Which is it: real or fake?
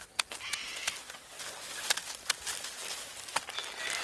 real